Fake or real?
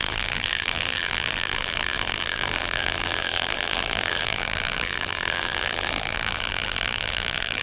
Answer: fake